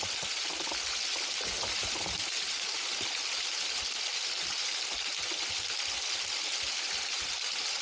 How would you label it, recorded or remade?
recorded